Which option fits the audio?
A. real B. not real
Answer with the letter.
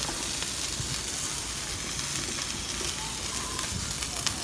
A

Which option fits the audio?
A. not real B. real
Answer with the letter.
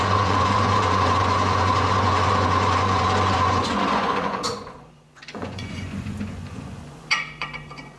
A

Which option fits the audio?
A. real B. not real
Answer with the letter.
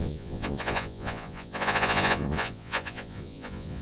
B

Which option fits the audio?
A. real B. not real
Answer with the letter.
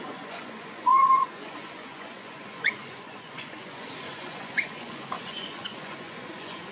B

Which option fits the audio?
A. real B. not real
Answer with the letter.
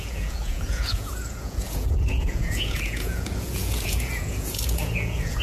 B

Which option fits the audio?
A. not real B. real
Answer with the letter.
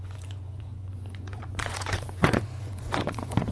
A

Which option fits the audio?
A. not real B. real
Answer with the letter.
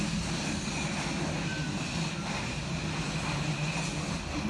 B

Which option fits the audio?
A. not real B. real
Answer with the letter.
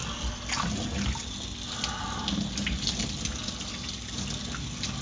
B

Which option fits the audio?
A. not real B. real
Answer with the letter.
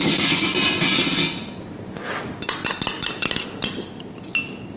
B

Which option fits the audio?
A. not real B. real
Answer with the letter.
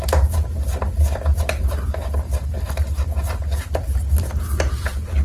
B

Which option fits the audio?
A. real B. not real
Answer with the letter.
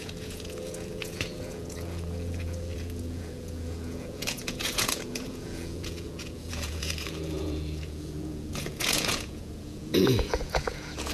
B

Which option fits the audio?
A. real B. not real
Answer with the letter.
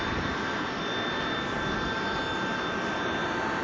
A